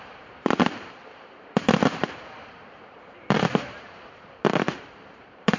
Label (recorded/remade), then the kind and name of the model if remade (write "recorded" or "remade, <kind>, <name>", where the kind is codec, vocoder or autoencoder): remade, vocoder, BigVGAN v2